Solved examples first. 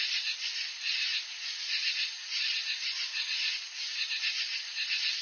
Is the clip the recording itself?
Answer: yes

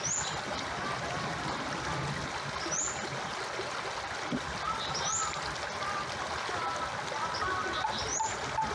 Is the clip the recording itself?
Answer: yes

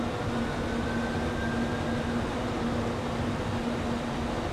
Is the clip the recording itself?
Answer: yes